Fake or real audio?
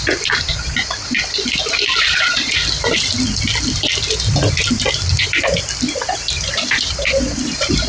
real